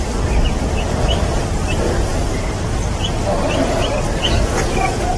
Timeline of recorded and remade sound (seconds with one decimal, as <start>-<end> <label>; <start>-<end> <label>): 0.0-2.1 remade; 2.1-3.7 recorded; 3.7-5.2 remade

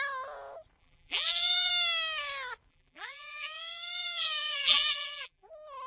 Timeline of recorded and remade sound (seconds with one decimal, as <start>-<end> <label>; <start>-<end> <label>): 0.0-0.8 recorded; 0.8-1.7 remade; 1.7-2.7 recorded; 2.7-5.5 remade; 5.5-5.9 recorded

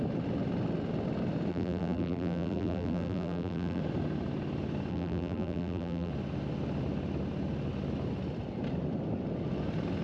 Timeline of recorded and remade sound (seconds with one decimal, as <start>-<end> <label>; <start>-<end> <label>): 0.0-1.5 recorded; 1.5-3.8 remade; 3.8-4.9 recorded; 4.9-6.1 remade; 6.1-10.0 recorded

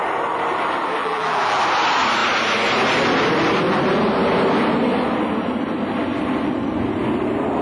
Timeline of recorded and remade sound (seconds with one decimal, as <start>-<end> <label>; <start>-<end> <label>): 0.0-1.0 recorded; 1.0-1.6 remade; 1.6-7.6 recorded

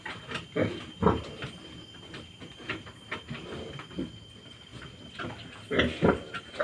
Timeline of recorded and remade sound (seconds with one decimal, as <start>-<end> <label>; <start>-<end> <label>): 0.0-6.6 recorded